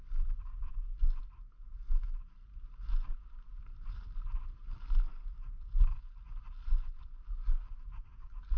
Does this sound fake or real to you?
real